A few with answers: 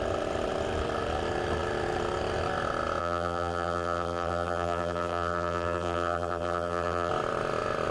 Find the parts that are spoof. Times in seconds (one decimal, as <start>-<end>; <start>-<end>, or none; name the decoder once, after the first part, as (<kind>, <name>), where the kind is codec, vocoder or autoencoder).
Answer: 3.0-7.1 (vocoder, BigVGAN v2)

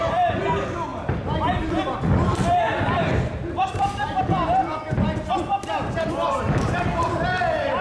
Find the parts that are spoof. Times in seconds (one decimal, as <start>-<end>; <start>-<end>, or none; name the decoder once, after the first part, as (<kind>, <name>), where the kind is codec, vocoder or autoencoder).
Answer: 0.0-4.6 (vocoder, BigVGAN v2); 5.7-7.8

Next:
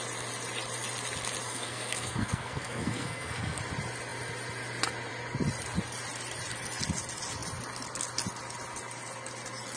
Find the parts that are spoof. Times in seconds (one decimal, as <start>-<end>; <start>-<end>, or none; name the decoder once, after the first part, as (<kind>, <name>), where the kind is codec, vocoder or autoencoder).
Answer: 1.5-3.6 (codec, SNAC)

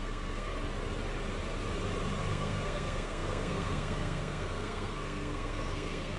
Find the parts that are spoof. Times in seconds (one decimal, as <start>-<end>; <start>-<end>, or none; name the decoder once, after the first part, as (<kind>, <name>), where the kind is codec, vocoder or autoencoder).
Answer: 0.0-0.5 (codec, SNAC); 2.3-6.2